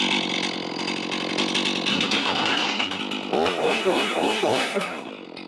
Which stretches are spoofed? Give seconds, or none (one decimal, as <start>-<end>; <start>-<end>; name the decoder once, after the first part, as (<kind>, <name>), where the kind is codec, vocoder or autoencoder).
1.9-3.0 (codec, SNAC); 3.6-5.1